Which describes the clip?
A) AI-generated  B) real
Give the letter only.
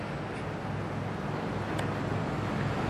B